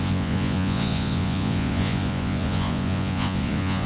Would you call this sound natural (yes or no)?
no